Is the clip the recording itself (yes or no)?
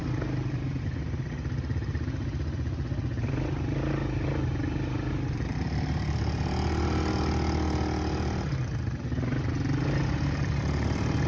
yes